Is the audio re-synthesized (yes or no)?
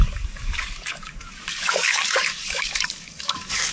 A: yes